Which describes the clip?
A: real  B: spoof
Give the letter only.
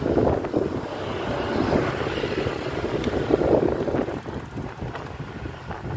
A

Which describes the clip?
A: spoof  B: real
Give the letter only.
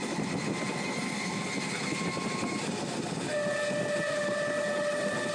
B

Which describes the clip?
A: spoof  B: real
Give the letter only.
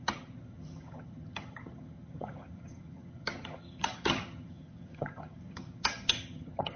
A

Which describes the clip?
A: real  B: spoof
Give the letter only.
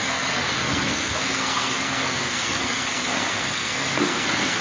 B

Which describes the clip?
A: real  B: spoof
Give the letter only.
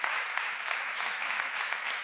B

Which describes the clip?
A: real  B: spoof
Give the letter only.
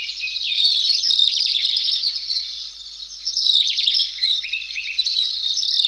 A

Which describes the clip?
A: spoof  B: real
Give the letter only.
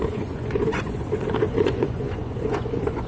A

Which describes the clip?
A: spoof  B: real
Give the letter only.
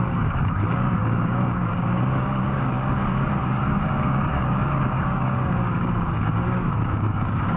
A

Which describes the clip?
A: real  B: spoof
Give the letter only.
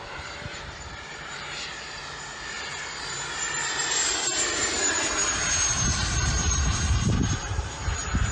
B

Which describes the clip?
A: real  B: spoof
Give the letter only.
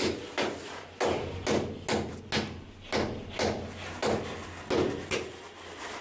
A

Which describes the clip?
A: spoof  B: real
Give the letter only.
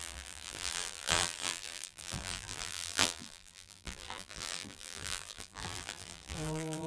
A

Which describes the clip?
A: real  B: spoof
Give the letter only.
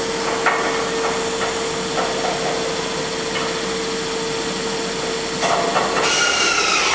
A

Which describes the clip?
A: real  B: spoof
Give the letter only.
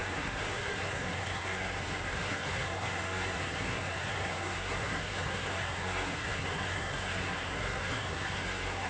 B